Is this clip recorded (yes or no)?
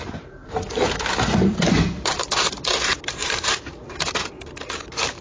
no